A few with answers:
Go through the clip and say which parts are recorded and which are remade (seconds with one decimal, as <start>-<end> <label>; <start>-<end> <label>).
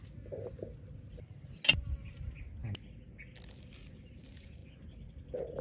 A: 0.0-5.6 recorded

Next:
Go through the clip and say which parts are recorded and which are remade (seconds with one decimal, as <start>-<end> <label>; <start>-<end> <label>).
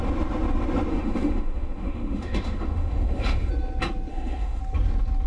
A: 0.0-0.9 recorded; 0.9-3.5 remade; 3.5-4.1 recorded; 4.1-4.6 remade; 4.6-5.3 recorded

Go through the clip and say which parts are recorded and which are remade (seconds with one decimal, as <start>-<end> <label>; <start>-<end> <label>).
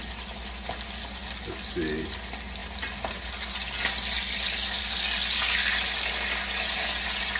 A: 0.0-7.4 recorded